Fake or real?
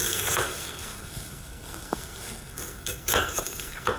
fake